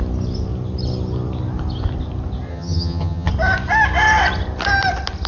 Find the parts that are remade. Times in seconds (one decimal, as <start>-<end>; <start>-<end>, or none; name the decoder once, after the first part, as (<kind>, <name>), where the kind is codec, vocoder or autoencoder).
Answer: 2.5-3.3 (vocoder, HiFi-GAN)